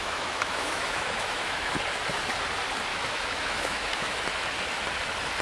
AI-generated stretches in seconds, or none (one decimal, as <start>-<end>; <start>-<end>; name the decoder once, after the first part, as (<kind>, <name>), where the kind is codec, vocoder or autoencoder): 0.0-1.7 (autoencoder, DAC-VAE); 2.9-4.2